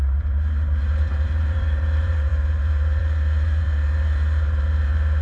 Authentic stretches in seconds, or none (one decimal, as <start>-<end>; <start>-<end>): none

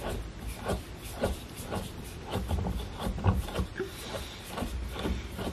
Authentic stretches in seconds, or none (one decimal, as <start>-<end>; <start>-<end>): none